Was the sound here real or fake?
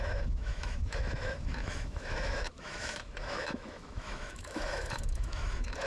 fake